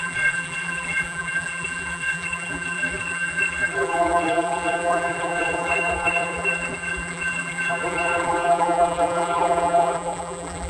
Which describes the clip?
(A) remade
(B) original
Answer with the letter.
A